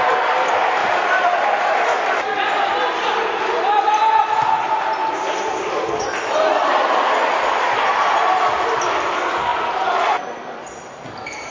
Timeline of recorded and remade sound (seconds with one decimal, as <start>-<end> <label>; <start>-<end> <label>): 0.0-5.0 recorded; 5.0-5.5 remade; 5.5-11.5 recorded